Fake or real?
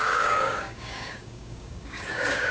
fake